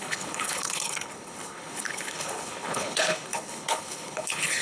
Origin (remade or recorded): remade